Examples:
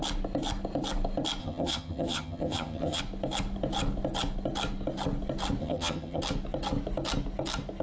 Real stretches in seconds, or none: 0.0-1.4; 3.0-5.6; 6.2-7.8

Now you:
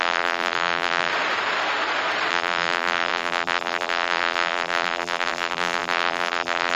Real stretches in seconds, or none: 1.1-2.3